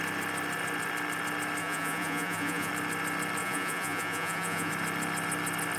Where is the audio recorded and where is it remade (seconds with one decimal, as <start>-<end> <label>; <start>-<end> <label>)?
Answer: 0.0-1.6 recorded; 1.6-2.7 remade; 2.7-3.4 recorded; 3.4-4.7 remade; 4.7-5.8 recorded